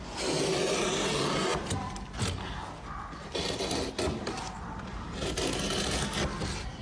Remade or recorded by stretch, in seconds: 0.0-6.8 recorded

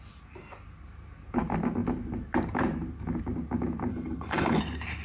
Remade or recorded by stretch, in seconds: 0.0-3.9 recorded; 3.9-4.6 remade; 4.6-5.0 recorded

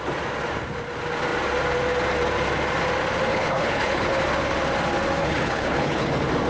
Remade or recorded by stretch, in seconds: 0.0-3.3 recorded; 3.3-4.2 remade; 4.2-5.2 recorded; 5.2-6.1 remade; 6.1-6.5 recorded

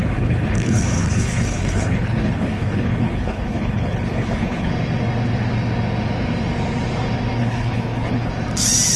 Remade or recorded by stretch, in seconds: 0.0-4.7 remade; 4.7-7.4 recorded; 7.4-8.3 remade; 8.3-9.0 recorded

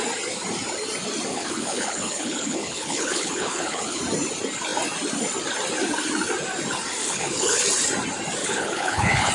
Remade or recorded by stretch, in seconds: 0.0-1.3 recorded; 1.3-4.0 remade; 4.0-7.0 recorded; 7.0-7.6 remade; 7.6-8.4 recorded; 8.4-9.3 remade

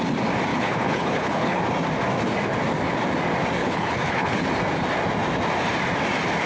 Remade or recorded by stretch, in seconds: 0.0-0.5 recorded; 0.5-1.6 remade; 1.6-3.6 recorded; 3.6-4.4 remade; 4.4-6.5 recorded